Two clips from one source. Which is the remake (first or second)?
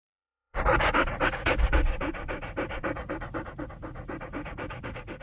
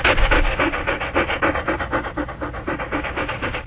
first